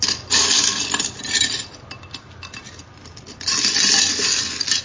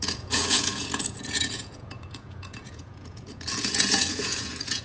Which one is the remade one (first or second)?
second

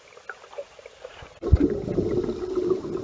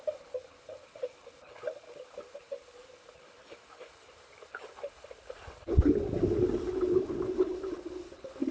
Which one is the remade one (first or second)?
second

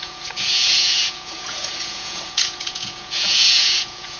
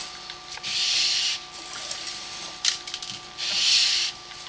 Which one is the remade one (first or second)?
first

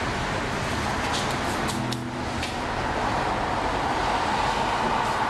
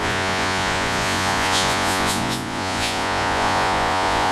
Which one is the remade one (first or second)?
second